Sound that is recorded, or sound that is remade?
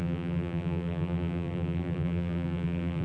remade